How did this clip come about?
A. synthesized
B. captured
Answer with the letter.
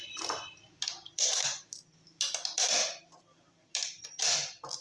A